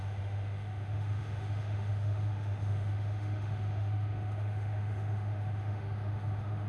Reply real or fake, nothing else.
fake